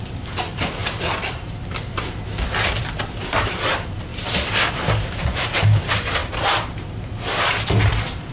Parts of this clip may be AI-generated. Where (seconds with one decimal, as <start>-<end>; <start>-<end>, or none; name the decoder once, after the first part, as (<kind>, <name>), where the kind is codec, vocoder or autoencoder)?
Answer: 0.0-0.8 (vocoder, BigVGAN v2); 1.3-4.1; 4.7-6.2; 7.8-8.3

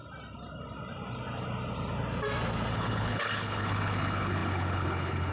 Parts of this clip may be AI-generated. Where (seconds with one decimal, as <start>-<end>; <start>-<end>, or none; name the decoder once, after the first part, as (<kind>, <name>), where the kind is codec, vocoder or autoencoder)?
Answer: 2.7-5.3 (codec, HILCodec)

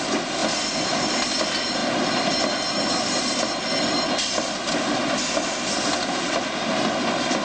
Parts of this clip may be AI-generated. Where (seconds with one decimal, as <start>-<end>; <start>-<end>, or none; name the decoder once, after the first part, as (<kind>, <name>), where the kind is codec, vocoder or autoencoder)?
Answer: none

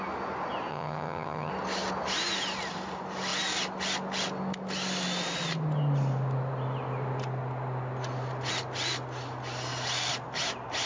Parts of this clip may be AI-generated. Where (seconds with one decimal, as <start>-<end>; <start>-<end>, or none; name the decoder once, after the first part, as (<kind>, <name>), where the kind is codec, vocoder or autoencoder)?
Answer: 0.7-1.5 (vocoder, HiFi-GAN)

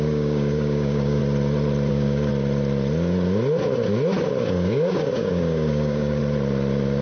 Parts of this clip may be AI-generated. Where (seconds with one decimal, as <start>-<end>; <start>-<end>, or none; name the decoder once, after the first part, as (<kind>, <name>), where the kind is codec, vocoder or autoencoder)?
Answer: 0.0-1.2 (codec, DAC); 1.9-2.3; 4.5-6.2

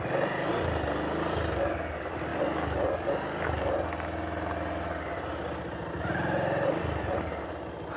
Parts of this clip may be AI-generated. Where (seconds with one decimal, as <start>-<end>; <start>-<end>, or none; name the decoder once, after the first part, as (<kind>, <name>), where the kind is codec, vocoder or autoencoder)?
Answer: none